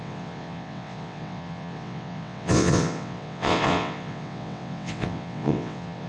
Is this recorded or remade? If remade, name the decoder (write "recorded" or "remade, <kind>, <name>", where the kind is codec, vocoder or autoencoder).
remade, vocoder, WaveNeXt